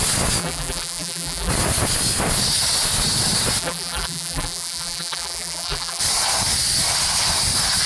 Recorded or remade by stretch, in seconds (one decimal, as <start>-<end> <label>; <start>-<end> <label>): 0.0-0.4 recorded; 0.4-1.5 remade; 1.5-3.6 recorded; 3.6-6.0 remade; 6.0-7.9 recorded